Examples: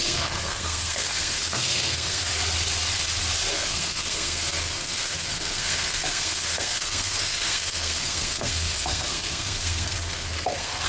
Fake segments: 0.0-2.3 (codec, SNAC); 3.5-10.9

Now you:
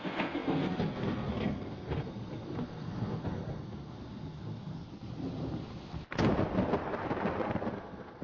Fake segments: 0.0-4.9 (codec, SNAC); 7.7-8.2

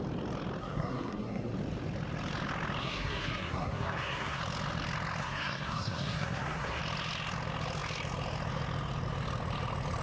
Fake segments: 0.6-1.5 (codec, SNAC); 2.8-4.4; 5.2-6.8

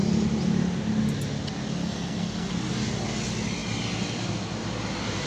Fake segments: 1.8-2.5 (codec, SNAC)